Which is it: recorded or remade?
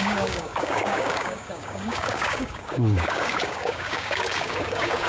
remade